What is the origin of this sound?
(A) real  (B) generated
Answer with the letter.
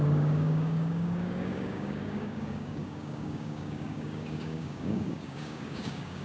B